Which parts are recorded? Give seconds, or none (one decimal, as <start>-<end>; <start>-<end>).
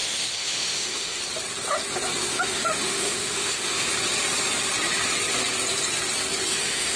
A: 1.2-2.3; 3.9-6.5